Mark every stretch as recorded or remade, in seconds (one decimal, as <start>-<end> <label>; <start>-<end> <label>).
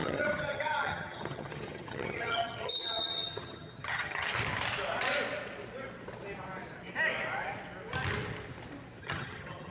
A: 0.0-4.3 remade; 4.3-9.0 recorded; 9.0-9.7 remade